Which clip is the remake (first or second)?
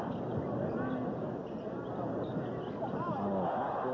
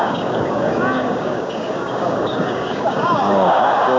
second